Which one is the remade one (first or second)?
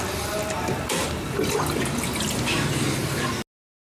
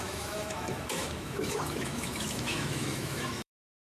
second